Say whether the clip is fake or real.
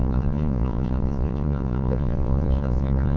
fake